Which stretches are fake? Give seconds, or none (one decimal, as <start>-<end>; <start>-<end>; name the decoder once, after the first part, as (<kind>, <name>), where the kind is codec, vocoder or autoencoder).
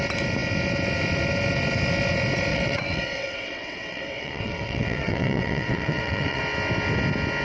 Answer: 2.5-6.4 (vocoder, WaveNeXt)